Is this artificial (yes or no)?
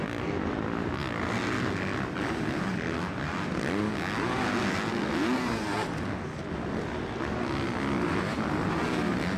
no